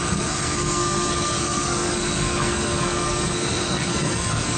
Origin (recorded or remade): remade